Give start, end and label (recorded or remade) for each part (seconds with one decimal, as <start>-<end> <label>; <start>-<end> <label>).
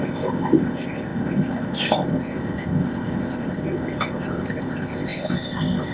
0.0-5.9 remade